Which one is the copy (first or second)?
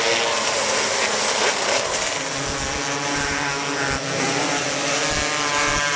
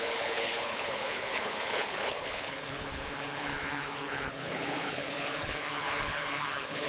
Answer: second